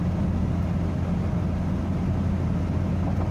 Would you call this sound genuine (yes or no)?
yes